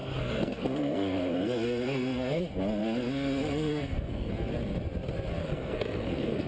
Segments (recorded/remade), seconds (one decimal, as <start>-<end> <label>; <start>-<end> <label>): 0.0-2.4 remade; 2.4-2.8 recorded; 2.8-4.3 remade; 4.3-5.4 recorded; 5.4-6.5 remade